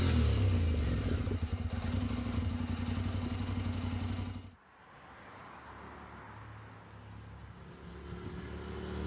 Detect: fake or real real